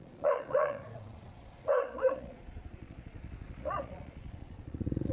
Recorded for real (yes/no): no